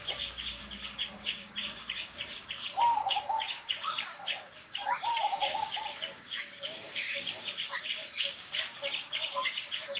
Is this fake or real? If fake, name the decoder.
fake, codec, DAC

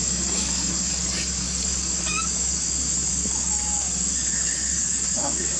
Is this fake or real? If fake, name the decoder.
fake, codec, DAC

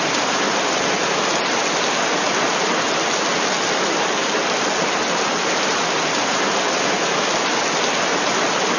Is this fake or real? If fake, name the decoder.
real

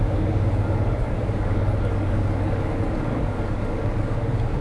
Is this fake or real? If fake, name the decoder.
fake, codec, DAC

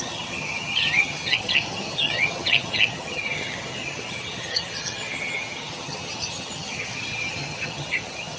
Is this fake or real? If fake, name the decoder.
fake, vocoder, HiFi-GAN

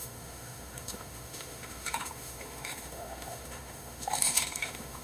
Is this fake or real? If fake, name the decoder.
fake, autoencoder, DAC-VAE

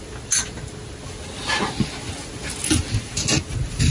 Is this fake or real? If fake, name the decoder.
real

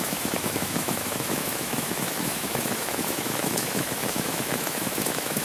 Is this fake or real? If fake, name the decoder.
fake, autoencoder, DAC-VAE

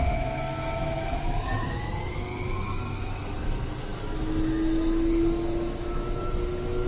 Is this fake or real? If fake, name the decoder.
fake, autoencoder, DAC-VAE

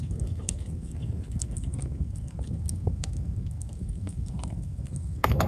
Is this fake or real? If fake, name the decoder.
fake, codec, SNAC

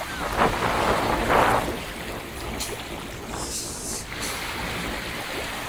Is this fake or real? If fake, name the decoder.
real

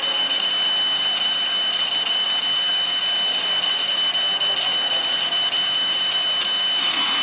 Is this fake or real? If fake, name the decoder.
real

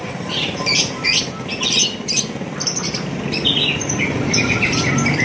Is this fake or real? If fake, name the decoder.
real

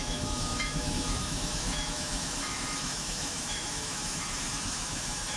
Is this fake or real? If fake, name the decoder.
fake, autoencoder, DAC-VAE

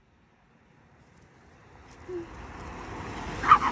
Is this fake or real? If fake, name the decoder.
real